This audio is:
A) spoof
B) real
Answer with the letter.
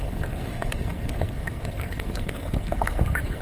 A